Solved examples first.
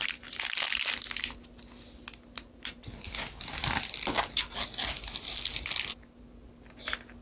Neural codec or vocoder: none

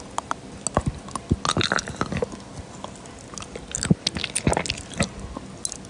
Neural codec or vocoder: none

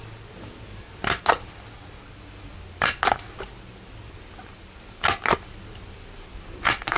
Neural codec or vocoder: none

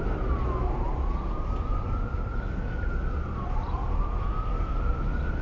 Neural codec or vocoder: none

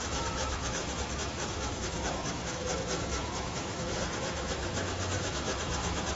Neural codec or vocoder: autoencoder, DAC-VAE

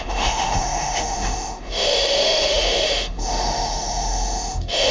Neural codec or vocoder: autoencoder, DAC-VAE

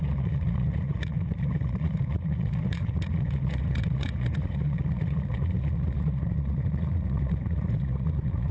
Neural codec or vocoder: vocoder, Vocos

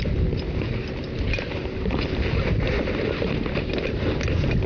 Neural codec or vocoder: none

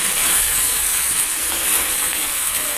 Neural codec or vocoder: codec, SNAC